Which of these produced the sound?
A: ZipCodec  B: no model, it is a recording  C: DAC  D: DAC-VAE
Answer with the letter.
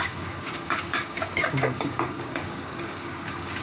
C